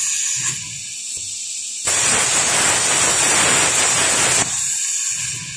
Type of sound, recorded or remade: recorded